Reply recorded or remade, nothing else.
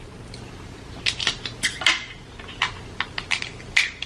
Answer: recorded